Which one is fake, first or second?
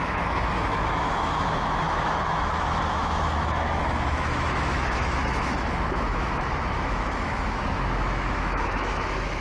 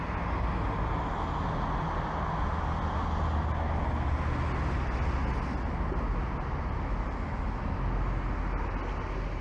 first